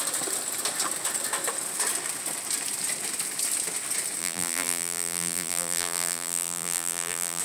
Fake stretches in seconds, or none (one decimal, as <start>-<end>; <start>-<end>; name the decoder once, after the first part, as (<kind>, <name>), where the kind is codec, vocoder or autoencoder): 4.2-7.4 (vocoder, BigVGAN v2)